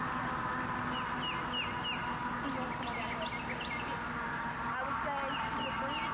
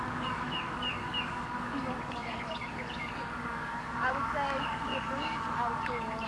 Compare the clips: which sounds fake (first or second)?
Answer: second